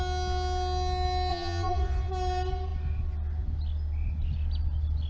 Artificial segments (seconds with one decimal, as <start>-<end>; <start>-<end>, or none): 1.3-2.1